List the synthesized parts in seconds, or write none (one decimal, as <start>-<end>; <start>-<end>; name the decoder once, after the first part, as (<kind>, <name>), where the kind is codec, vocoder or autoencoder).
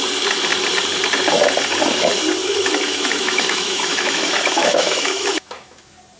2.4-5.8 (autoencoder, DAC-VAE)